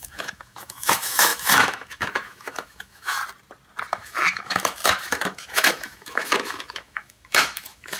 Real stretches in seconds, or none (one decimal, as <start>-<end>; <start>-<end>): 3.2-3.9